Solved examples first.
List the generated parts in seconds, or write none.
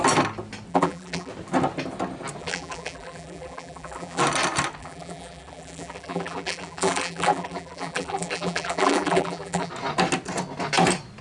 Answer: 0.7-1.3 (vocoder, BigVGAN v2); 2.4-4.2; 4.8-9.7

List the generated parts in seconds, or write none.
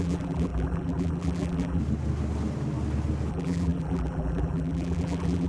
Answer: 0.0-1.8 (vocoder, BigVGAN v2); 3.3-5.5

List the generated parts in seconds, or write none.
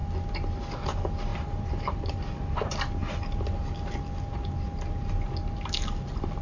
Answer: 1.3-2.2 (vocoder, BigVGAN v2)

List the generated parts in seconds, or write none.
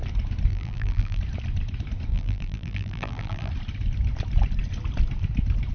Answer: 0.5-1.2 (vocoder, BigVGAN v2); 2.1-3.5